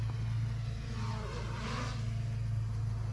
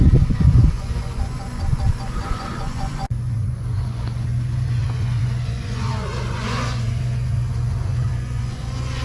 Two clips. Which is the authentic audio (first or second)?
first